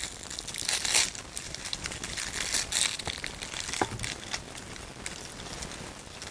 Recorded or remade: recorded